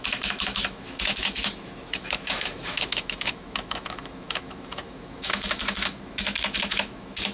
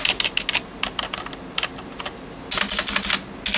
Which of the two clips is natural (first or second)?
second